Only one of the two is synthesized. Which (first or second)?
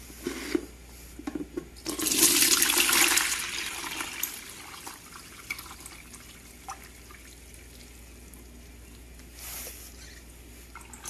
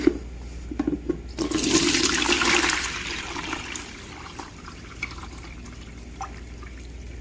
second